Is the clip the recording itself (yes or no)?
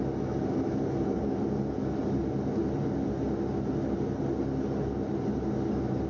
yes